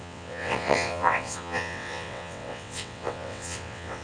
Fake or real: fake